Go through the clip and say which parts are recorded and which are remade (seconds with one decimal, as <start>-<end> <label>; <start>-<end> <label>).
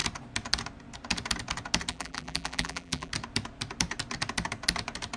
0.0-1.9 recorded; 1.9-3.1 remade; 3.1-5.2 recorded